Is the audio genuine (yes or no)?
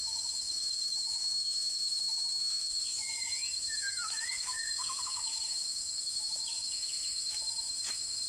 no